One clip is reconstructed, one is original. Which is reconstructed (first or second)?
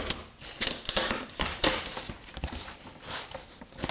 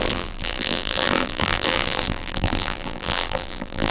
second